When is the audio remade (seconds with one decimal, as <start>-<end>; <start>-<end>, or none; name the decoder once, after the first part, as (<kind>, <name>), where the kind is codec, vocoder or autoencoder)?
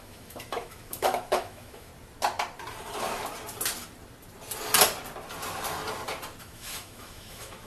0.0-1.9 (autoencoder, DAC-VAE); 6.4-7.7